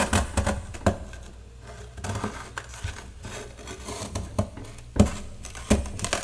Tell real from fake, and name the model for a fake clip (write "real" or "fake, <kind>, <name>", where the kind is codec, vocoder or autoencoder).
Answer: real